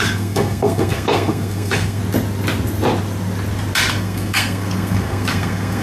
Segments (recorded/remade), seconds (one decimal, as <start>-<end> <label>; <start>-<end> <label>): 0.0-2.0 remade; 2.0-3.9 recorded; 3.9-5.8 remade